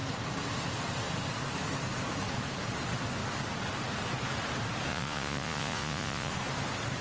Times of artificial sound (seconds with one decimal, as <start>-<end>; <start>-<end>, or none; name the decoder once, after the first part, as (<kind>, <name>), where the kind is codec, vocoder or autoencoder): 4.9-6.3 (vocoder, Vocos)